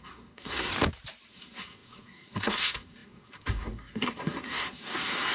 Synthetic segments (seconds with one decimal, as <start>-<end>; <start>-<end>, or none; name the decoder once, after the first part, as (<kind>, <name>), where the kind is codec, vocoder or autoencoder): 0.0-0.7 (codec, SNAC); 1.3-5.3